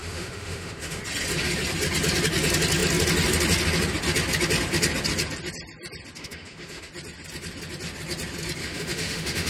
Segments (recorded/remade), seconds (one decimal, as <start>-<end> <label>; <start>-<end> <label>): 0.0-1.0 remade; 1.0-6.2 recorded; 6.2-6.9 remade; 6.9-8.6 recorded; 8.6-9.5 remade